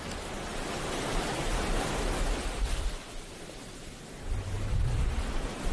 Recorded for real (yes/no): yes